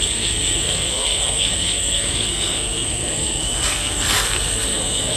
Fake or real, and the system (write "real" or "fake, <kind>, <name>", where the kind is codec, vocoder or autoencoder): fake, codec, SNAC